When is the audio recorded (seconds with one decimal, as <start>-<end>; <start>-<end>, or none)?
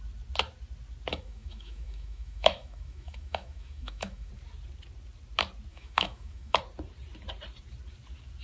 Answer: 0.0-1.1; 4.3-5.7; 6.6-8.4